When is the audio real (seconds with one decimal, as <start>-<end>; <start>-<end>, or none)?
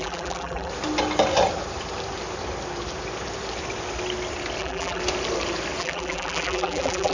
0.7-4.6; 5.0-5.8